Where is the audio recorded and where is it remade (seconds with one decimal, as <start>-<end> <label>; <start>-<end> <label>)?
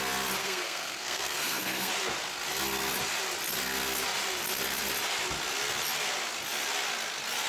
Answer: 0.0-0.4 recorded; 0.4-1.9 remade; 1.9-7.5 recorded